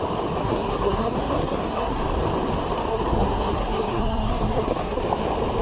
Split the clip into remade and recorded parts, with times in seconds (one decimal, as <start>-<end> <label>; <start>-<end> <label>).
0.0-0.4 recorded; 0.4-2.0 remade; 2.0-2.9 recorded; 2.9-5.0 remade; 5.0-5.6 recorded